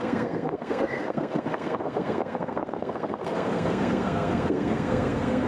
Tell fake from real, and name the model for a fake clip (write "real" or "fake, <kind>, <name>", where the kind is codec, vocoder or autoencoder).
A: fake, codec, SNAC